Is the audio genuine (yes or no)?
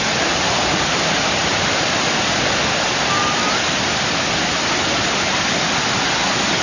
yes